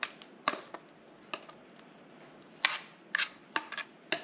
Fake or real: real